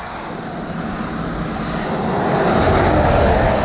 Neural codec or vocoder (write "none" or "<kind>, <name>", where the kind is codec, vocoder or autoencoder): none